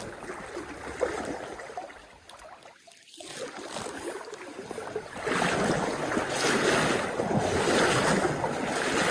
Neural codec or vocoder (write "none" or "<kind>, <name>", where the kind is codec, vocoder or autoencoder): none